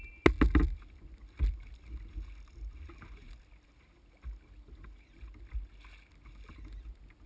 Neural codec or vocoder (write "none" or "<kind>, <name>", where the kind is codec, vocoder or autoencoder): none